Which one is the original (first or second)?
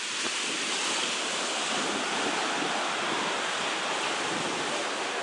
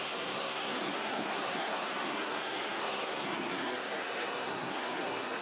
first